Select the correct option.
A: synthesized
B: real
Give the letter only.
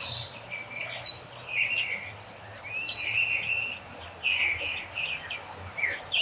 B